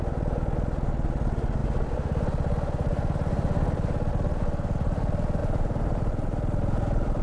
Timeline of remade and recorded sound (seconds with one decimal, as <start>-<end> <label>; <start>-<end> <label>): 0.0-5.4 recorded; 5.4-6.1 remade; 6.1-7.2 recorded